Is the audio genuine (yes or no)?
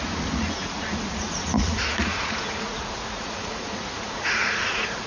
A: no